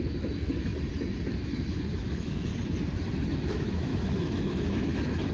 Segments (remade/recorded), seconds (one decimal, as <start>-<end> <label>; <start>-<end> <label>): 0.0-0.7 remade; 0.7-1.3 recorded; 1.3-2.5 remade; 2.5-3.3 recorded; 3.3-5.3 remade